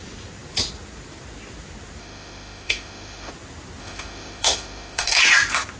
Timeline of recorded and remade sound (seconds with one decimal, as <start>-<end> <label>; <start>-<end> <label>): 0.0-2.0 recorded; 2.0-3.3 remade; 3.3-3.8 recorded; 3.8-5.2 remade; 5.2-5.8 recorded